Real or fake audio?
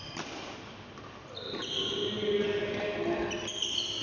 real